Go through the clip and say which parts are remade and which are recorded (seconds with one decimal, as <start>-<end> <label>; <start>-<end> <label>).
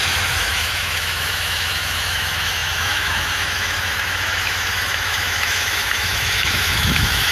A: 0.0-7.3 remade